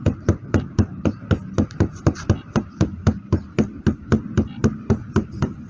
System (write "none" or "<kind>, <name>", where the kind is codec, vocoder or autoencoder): none